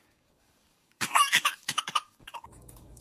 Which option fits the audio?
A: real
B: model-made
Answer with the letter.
B